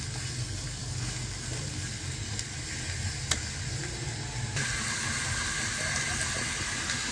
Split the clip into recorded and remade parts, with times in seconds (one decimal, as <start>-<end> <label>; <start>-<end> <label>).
0.0-7.1 recorded